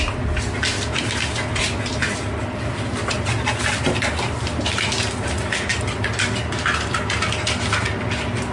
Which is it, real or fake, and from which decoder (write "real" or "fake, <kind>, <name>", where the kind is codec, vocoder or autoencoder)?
real